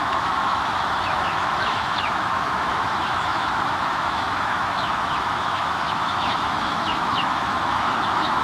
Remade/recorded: remade